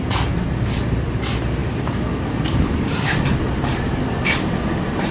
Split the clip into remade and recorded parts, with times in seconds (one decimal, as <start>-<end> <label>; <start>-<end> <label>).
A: 0.0-5.1 recorded